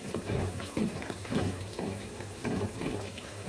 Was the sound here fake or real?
fake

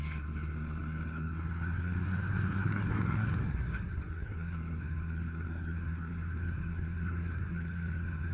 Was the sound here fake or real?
fake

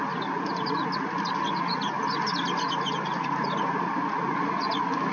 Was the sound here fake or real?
real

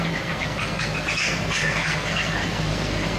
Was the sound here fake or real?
fake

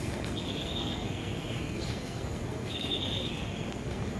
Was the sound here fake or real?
fake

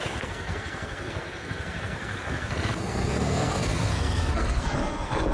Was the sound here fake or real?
fake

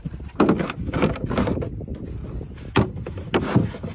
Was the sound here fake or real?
real